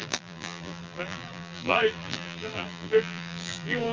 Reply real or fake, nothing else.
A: fake